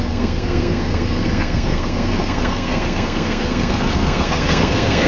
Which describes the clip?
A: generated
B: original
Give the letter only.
A